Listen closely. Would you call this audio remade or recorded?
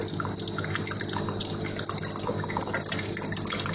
recorded